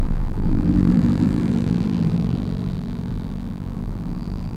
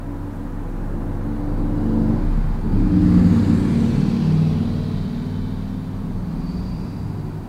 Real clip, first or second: second